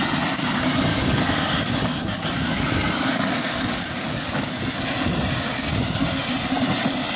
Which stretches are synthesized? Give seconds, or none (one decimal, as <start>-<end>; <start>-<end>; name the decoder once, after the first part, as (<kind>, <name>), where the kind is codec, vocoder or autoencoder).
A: 0.9-4.6 (codec, DAC)